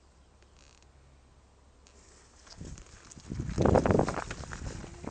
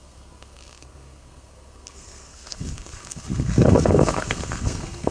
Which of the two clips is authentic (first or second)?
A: first